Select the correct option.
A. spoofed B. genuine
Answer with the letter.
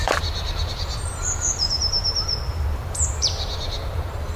A